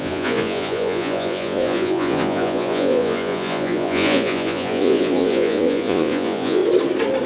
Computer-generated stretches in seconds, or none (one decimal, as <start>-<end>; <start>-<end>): 0.0-6.6